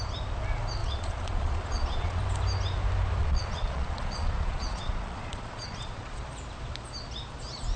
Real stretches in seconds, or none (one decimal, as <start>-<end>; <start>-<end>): 0.0-0.8; 2.2-3.2; 6.2-7.8